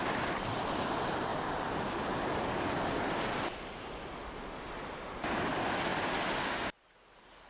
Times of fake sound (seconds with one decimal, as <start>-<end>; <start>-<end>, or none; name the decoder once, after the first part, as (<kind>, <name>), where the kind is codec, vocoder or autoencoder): none